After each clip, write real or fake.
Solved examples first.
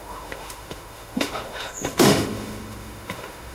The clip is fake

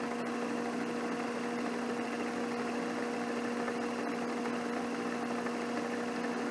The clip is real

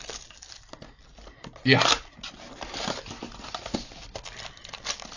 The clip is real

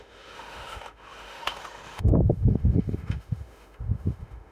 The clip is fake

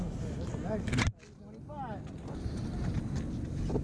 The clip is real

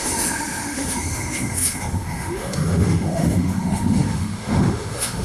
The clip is fake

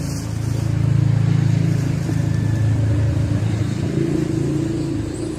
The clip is real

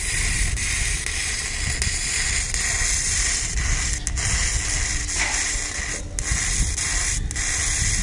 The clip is real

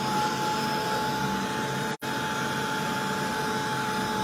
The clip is real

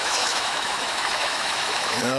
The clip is fake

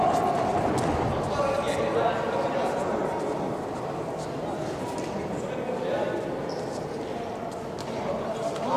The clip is real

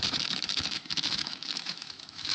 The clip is fake